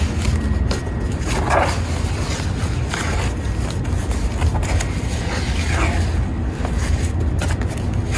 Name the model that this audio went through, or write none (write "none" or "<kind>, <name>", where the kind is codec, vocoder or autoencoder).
none